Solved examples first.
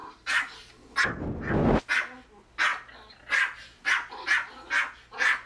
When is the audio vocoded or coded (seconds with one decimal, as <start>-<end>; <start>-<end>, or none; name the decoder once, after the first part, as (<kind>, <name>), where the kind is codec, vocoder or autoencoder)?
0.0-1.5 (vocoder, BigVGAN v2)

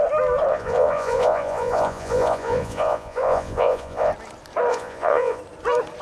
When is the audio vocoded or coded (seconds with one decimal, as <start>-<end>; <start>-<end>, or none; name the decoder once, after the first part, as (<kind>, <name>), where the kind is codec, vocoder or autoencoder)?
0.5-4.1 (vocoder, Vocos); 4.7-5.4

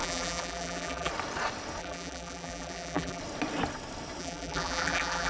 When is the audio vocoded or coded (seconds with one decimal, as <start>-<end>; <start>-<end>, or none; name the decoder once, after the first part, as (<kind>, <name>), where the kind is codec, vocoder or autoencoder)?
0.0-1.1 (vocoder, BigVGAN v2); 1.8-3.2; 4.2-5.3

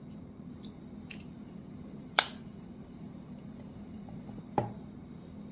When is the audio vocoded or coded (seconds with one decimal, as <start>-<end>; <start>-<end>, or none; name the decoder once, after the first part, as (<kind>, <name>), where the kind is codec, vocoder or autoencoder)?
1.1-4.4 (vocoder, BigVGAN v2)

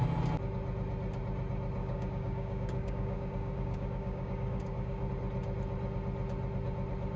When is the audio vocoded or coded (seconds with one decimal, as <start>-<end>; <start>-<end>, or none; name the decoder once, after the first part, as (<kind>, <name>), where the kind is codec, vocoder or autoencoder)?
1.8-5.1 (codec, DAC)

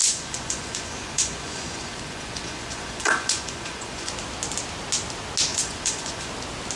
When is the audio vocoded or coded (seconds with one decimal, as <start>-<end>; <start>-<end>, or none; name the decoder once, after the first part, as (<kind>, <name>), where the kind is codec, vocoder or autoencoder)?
0.0-4.1 (vocoder, Vocos); 5.5-6.3

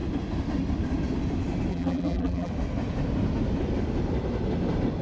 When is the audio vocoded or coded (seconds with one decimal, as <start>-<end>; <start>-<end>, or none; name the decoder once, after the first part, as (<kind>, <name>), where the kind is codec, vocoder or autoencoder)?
1.7-2.5 (vocoder, BigVGAN v2)